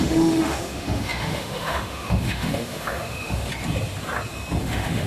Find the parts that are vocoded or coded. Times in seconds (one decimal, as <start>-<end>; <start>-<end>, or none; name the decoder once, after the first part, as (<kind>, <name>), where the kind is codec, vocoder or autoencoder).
0.0-3.5 (autoencoder, DAC-VAE); 4.6-5.1